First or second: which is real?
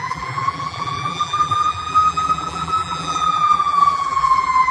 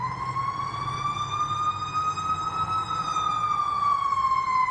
second